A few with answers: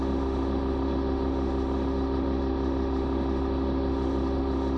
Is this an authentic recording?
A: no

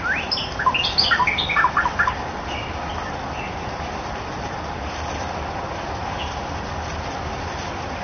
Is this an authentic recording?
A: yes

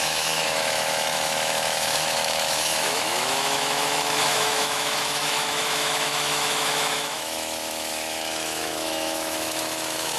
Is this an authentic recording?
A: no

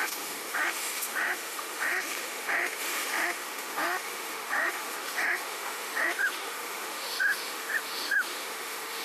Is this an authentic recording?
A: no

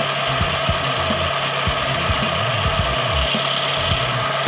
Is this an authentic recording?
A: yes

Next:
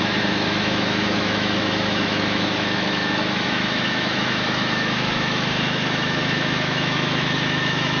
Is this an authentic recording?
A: no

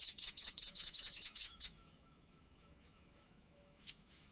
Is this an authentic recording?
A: no